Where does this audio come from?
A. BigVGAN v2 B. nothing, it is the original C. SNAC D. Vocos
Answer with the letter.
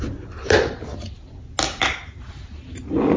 B